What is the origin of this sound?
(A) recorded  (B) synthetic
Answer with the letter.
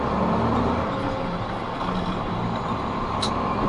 A